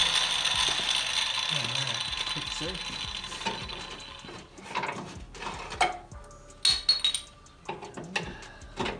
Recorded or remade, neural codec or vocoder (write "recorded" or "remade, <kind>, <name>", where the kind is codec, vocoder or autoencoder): recorded